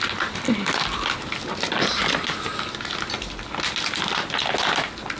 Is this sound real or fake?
real